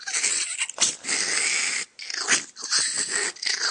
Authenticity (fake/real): real